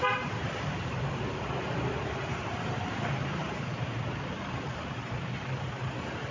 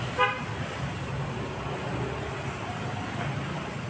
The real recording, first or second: second